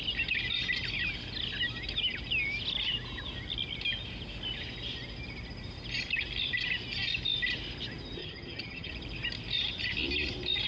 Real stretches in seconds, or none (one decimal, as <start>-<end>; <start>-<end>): 0.0-8.2; 8.9-10.7